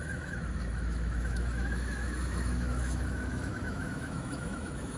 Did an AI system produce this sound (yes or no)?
yes